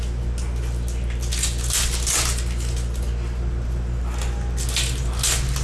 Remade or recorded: recorded